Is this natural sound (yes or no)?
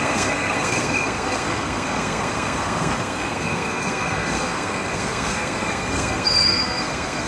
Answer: no